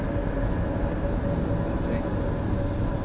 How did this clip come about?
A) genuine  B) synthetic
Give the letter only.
A